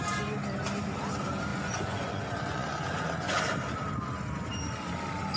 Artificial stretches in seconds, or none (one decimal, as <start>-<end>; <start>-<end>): 1.5-3.4